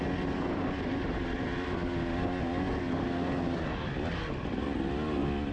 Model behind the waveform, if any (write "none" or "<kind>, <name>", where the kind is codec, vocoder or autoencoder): none